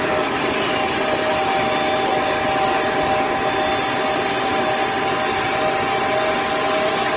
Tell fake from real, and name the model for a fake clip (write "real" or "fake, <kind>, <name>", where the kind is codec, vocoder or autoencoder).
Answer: real